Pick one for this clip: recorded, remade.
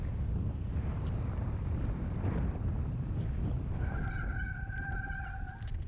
recorded